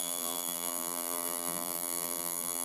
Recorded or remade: remade